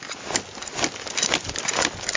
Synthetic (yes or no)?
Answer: no